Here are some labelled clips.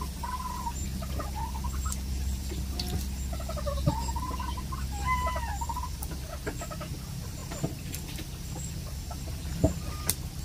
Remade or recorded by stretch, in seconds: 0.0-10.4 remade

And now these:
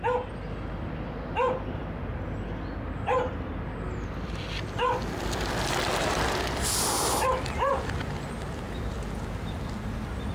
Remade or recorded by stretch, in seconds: 0.0-5.9 recorded; 5.9-7.8 remade; 7.8-10.3 recorded